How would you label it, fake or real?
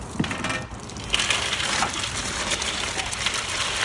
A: real